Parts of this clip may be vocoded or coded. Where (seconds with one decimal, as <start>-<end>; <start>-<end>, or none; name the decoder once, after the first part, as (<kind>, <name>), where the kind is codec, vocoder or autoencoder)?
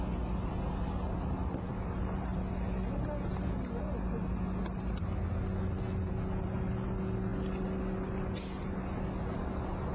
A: none